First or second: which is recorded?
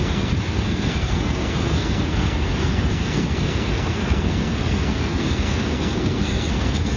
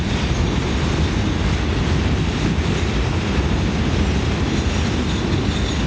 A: second